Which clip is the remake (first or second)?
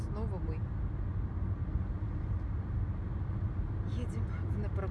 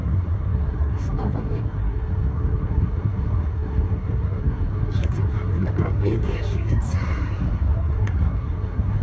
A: second